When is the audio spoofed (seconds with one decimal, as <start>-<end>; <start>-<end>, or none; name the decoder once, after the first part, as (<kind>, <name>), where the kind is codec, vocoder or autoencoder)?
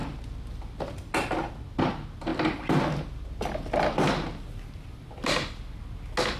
none